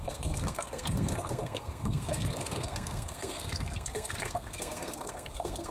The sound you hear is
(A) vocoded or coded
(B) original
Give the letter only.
A